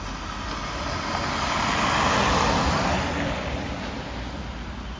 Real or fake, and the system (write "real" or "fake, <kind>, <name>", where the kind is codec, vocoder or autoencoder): real